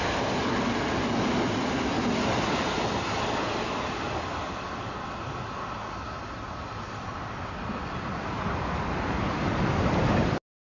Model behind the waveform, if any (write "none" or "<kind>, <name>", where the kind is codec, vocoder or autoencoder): none